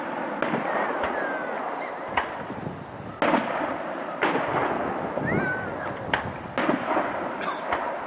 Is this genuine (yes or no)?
yes